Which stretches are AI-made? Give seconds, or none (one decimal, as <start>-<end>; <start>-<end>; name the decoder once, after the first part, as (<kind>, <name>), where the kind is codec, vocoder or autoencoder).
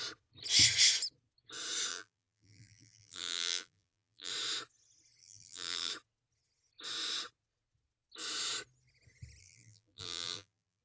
1.9-4.3 (vocoder, BigVGAN v2); 5.2-5.9; 9.4-10.8